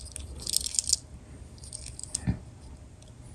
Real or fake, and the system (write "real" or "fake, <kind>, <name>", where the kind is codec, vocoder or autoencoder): real